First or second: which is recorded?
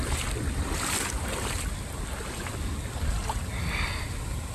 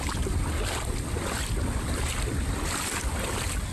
first